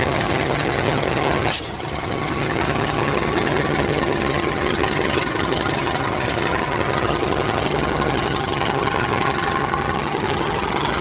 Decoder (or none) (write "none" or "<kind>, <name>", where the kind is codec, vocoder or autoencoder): vocoder, HiFi-GAN